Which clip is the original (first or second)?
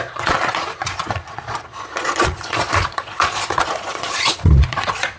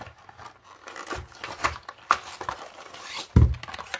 second